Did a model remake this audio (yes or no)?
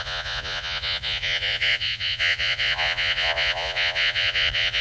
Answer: yes